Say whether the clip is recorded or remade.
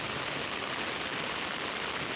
recorded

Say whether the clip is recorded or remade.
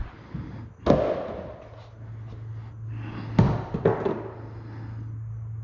recorded